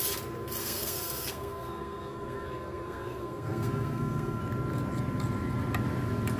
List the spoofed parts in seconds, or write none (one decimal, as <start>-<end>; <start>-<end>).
0.6-4.4